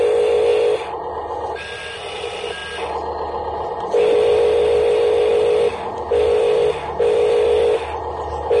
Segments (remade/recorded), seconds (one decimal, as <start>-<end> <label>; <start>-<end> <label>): 0.0-8.6 recorded

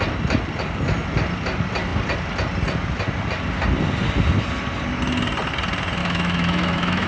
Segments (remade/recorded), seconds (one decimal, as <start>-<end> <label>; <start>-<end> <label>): 0.0-6.0 recorded; 6.0-7.1 remade

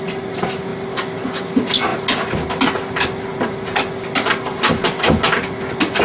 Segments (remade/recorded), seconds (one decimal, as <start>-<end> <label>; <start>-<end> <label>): 0.0-6.0 recorded

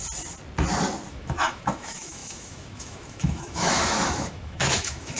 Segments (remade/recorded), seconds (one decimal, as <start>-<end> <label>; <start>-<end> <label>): 0.0-1.1 recorded; 1.1-5.2 remade

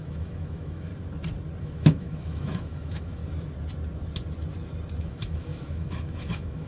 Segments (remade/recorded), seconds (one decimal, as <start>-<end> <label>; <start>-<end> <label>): 0.0-0.9 remade; 0.9-1.6 recorded; 1.6-3.2 remade; 3.2-5.0 recorded; 5.0-6.7 remade

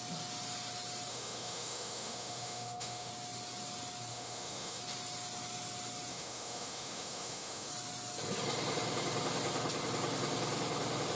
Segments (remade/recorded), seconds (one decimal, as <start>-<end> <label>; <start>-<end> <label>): 0.0-1.1 recorded; 1.1-3.1 remade; 3.1-4.1 recorded; 4.1-4.8 remade; 4.8-6.1 recorded; 6.1-7.7 remade; 7.7-11.2 recorded

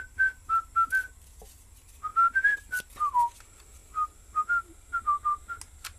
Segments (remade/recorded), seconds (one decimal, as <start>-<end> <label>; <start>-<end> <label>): 0.0-6.0 recorded